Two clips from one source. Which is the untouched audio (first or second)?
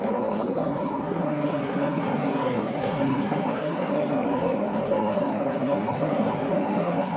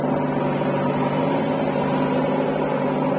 second